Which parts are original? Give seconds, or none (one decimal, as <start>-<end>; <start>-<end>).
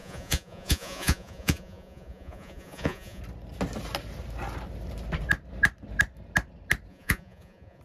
3.2-6.9